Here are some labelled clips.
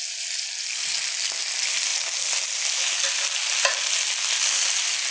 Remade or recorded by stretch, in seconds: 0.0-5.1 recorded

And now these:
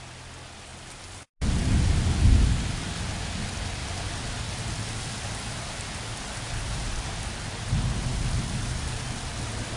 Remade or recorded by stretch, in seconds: 0.0-9.8 recorded

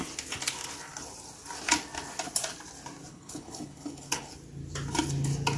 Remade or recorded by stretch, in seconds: 0.0-3.1 recorded; 3.1-4.3 remade; 4.3-5.6 recorded

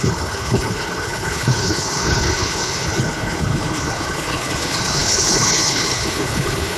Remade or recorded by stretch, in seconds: 0.0-6.8 remade

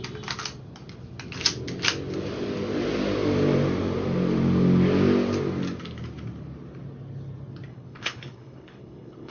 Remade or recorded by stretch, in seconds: 0.0-7.7 recorded; 7.7-9.3 remade